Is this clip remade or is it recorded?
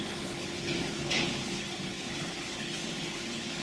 remade